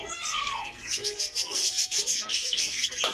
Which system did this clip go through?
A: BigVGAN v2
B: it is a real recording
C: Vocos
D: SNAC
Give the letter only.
D